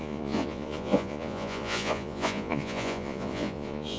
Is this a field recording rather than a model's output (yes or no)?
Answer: no